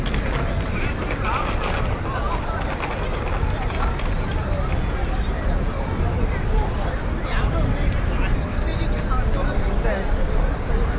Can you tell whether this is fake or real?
real